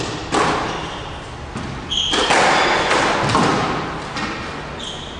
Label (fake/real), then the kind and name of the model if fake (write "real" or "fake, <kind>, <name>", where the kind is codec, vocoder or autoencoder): real